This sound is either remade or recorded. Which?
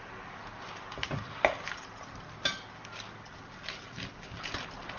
recorded